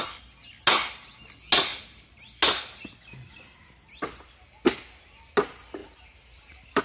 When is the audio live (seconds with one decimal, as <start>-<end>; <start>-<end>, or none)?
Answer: 0.0-5.8